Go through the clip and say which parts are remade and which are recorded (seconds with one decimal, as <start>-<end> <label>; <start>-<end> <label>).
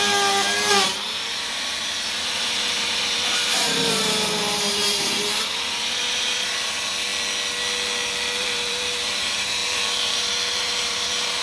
0.0-7.1 remade; 7.1-8.4 recorded; 8.4-11.4 remade